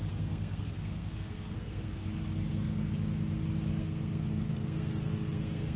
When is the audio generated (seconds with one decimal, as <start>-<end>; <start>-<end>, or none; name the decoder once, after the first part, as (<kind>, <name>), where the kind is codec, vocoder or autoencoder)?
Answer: 0.0-2.0 (codec, SNAC); 2.5-2.9; 3.8-5.8